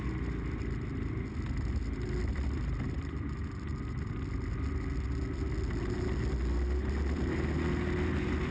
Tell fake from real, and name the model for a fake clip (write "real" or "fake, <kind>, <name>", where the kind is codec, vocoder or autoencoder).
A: real